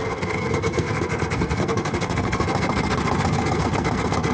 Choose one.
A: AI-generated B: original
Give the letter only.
A